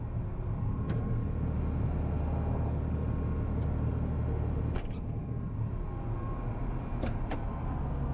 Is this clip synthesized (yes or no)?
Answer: no